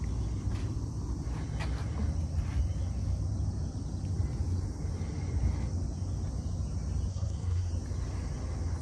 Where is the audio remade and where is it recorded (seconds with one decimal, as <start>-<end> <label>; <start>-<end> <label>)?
0.0-7.1 recorded; 7.1-7.7 remade; 7.7-8.8 recorded